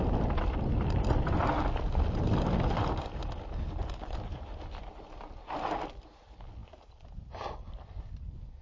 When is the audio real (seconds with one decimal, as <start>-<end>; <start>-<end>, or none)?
0.0-8.6